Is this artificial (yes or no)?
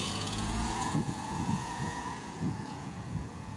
yes